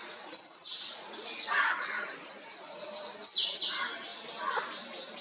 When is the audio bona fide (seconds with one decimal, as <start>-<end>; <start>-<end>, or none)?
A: 3.1-5.2